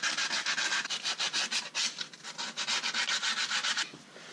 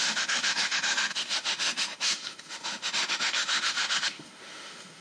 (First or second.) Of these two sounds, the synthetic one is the second